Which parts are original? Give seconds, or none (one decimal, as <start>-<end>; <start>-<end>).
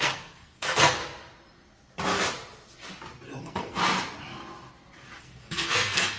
1.0-3.4; 3.8-5.2